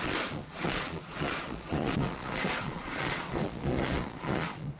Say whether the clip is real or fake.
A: fake